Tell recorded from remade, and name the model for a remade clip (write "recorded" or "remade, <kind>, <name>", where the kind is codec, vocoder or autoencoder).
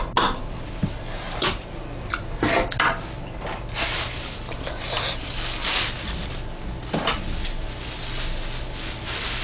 recorded